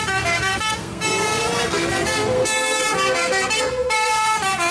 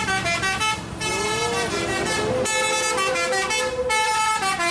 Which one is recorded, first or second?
second